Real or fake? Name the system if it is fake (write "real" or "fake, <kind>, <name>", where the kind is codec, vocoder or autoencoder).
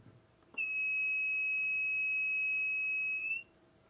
real